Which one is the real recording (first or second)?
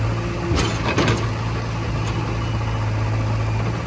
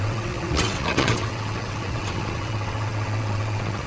first